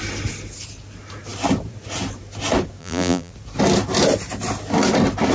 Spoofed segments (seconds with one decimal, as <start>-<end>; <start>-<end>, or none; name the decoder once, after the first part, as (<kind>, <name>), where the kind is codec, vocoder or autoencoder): 2.8-3.3 (vocoder, BigVGAN v2)